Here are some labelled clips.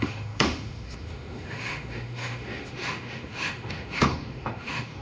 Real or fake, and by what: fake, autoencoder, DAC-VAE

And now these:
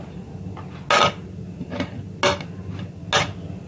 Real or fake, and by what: real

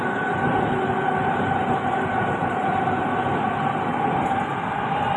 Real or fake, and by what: real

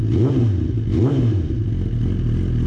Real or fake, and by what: real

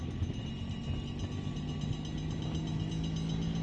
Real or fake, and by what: real